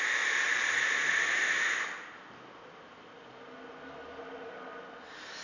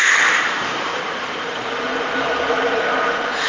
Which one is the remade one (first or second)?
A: second